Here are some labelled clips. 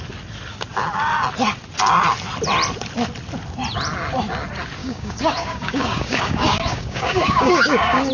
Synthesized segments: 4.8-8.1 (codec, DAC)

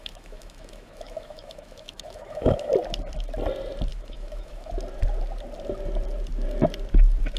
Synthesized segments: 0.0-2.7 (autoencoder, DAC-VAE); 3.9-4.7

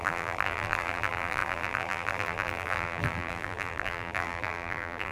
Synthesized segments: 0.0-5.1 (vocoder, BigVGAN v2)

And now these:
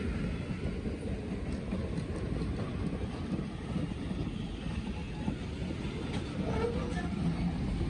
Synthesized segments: none

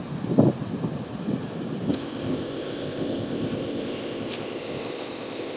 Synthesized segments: 1.9-5.6 (codec, ZipCodec)

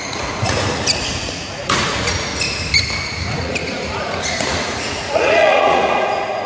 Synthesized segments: 0.0-2.3 (vocoder, Vocos); 3.0-6.5